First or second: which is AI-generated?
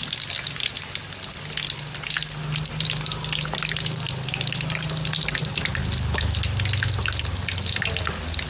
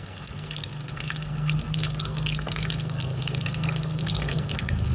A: second